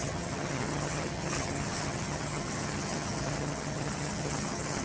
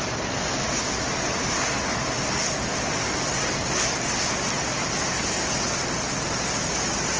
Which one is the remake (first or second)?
first